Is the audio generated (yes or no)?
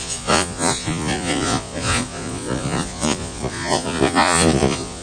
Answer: yes